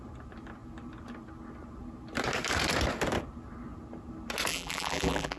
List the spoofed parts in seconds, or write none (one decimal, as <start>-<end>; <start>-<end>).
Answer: 4.5-5.4